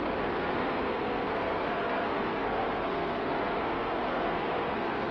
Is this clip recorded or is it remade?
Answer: remade